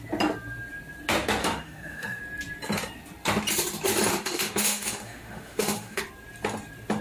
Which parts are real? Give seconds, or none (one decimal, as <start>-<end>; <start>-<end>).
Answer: 0.0-1.4; 2.2-4.1; 6.0-7.0